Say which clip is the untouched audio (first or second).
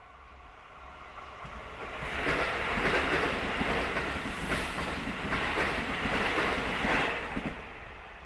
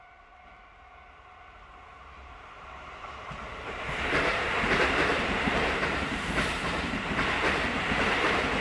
first